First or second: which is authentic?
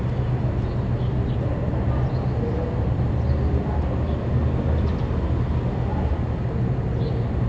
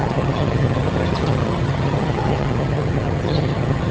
first